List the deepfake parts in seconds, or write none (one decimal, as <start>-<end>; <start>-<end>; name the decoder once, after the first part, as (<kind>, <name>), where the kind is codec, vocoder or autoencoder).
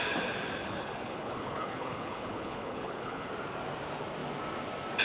0.6-3.3 (codec, HILCodec)